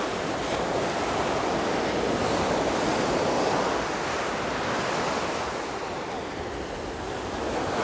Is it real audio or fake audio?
real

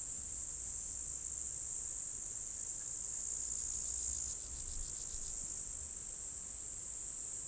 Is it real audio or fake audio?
real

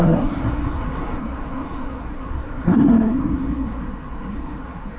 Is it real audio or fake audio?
fake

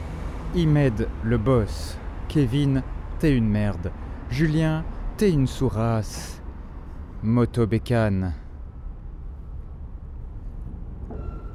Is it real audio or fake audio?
real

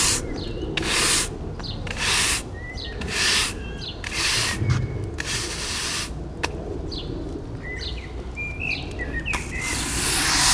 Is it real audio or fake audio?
real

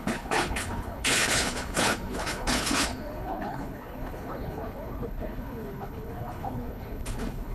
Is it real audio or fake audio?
fake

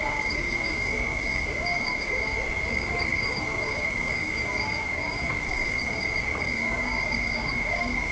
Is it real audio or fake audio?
fake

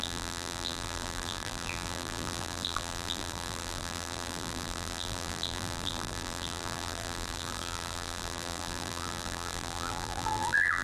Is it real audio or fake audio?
fake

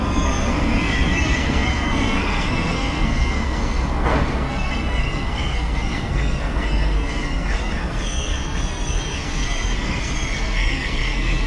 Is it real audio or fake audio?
fake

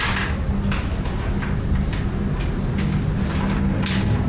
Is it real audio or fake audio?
real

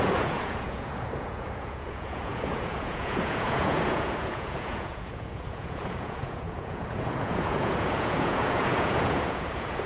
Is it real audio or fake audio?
fake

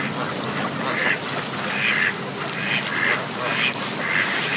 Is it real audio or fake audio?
real